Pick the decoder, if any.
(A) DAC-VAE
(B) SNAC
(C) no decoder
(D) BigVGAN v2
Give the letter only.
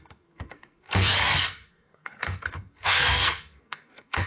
B